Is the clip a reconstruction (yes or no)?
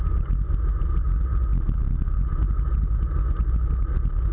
no